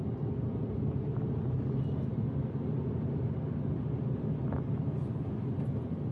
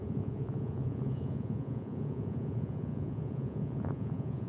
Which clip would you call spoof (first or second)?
second